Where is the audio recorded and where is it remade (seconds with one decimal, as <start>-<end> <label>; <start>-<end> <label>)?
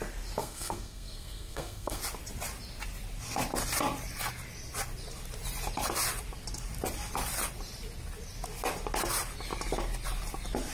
0.0-0.4 recorded; 0.4-2.0 remade; 2.0-10.7 recorded